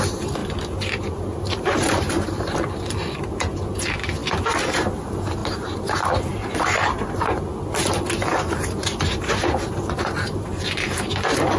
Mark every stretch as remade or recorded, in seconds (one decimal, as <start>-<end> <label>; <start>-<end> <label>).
0.0-0.4 recorded; 0.4-2.7 remade; 2.7-5.4 recorded; 5.4-7.4 remade; 7.4-8.8 recorded; 8.8-11.1 remade; 11.1-11.6 recorded